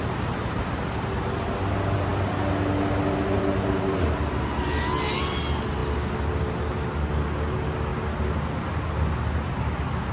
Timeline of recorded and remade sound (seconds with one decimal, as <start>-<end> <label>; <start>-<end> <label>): 0.0-10.1 recorded